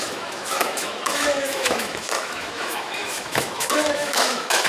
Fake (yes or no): yes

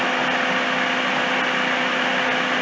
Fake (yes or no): no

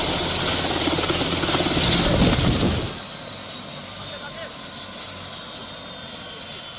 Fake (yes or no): no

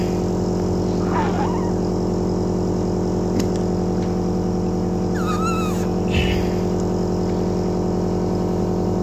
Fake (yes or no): no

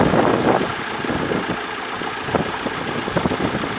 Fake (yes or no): no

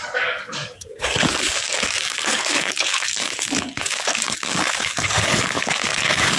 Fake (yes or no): yes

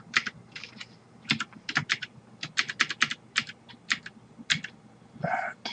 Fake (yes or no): no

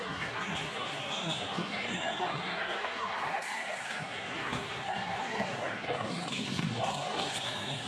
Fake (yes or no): yes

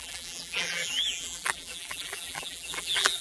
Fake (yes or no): yes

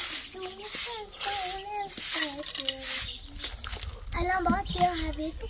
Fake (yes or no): no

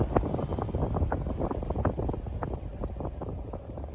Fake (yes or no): no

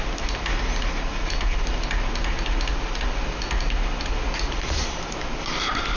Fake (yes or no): no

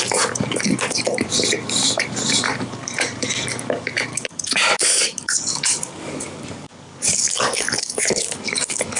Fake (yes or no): yes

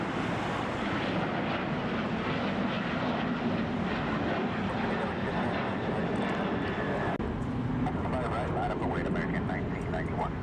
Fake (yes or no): no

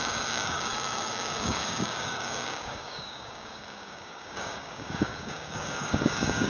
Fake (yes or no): yes